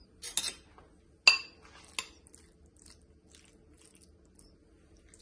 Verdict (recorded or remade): recorded